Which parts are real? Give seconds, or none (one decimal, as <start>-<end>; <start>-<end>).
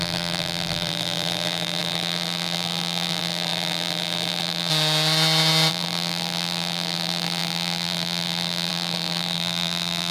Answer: 4.7-5.7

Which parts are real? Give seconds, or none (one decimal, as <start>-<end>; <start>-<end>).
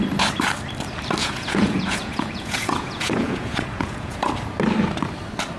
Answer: 0.0-1.2; 4.3-5.6